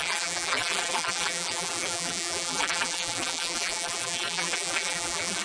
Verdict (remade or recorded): remade